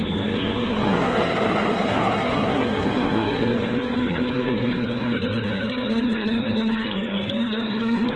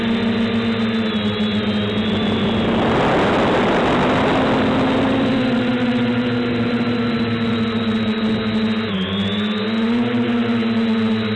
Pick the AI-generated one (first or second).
first